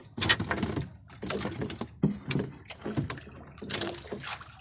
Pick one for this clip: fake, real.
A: fake